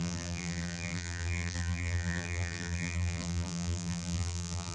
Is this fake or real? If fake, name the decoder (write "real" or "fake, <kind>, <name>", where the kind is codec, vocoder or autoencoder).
fake, vocoder, BigVGAN v2